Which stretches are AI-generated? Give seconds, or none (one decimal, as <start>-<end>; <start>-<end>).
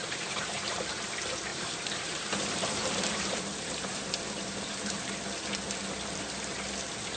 0.0-0.6; 1.5-5.1